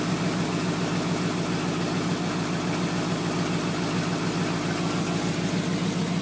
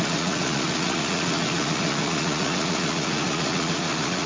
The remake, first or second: second